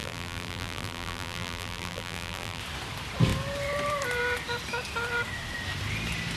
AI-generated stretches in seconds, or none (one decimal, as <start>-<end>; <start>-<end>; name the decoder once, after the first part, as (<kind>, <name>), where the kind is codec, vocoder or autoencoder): 0.0-2.6 (vocoder, BigVGAN v2)